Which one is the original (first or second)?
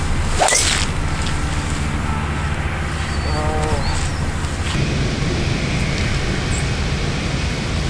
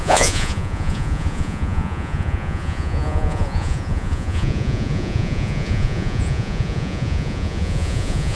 first